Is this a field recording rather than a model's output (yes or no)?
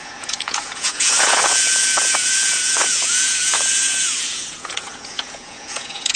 no